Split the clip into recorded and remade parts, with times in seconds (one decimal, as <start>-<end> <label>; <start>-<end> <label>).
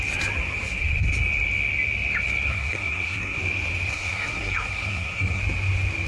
0.0-2.5 recorded; 2.5-3.4 remade; 3.4-3.9 recorded; 3.9-5.4 remade; 5.4-6.1 recorded